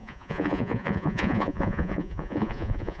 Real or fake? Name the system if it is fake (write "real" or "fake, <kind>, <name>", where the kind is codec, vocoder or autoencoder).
fake, vocoder, Vocos